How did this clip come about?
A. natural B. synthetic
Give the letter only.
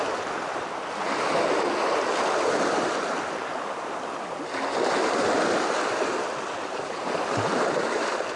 A